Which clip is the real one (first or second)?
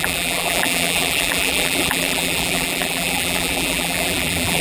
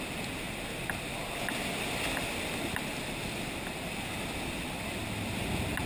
second